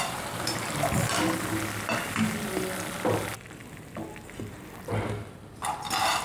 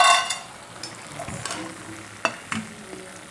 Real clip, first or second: second